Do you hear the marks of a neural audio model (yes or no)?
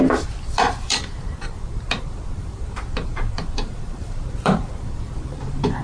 yes